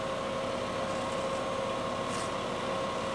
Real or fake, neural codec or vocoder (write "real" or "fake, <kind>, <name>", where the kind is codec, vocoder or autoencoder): real